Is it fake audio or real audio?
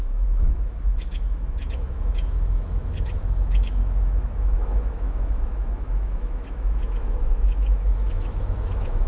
fake